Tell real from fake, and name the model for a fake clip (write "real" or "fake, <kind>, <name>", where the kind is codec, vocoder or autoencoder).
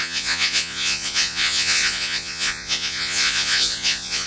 fake, vocoder, Vocos